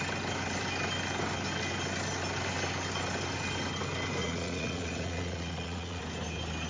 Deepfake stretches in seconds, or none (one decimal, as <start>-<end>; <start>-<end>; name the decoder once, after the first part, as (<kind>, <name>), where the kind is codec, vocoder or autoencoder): 4.2-6.0 (vocoder, Vocos)